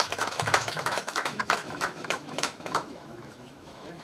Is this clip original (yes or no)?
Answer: no